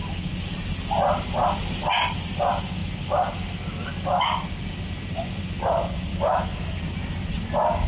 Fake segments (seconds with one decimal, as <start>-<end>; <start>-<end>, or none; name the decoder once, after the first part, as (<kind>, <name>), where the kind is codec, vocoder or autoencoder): 6.1-6.8 (autoencoder, DAC-VAE)